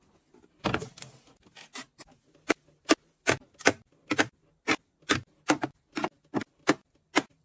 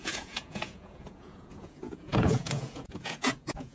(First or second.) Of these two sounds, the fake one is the second